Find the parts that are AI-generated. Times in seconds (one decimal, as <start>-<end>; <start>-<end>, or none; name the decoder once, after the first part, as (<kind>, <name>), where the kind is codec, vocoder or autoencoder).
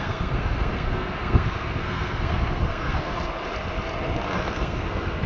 0.0-3.1 (codec, SNAC); 4.5-5.3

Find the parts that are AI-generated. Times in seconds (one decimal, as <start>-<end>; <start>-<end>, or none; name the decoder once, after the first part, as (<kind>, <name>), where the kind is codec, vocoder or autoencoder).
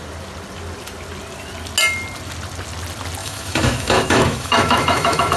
3.2-5.4 (autoencoder, DAC-VAE)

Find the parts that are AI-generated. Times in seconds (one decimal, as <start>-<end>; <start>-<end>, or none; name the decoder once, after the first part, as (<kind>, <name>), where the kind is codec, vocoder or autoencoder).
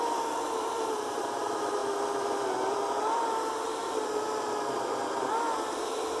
0.0-1.8 (vocoder, BigVGAN v2); 2.7-3.8; 5.2-6.2